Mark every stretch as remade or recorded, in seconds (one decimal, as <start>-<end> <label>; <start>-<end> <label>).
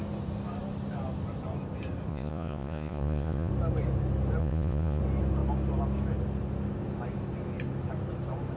0.0-2.1 recorded; 2.1-3.5 remade; 3.5-4.4 recorded; 4.4-5.0 remade; 5.0-8.6 recorded